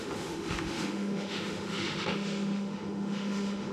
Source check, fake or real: fake